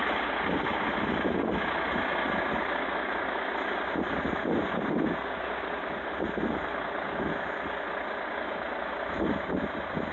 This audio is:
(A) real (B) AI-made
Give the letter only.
A